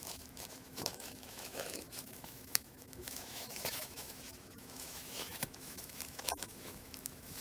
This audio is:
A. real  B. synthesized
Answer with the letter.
B